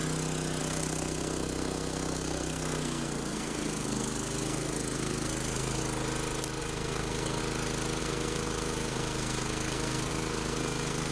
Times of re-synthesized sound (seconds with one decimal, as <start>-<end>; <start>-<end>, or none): 0.6-5.8; 6.6-7.4; 8.0-11.1